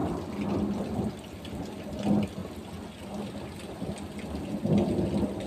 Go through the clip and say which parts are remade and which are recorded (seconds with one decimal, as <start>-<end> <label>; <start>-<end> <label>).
0.0-5.5 recorded